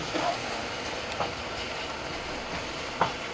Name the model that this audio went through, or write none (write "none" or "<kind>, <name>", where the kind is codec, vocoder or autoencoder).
vocoder, BigVGAN v2